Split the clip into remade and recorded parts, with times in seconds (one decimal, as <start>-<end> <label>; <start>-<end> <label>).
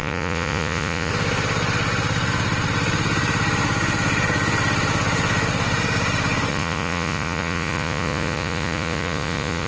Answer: 0.0-1.1 remade; 1.1-6.5 recorded; 6.5-9.7 remade